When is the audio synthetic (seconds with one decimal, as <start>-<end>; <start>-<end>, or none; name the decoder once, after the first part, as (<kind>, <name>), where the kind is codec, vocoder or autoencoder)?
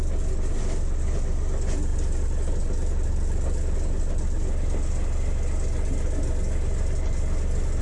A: none